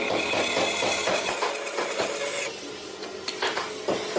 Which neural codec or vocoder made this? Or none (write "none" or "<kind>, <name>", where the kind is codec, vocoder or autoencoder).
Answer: none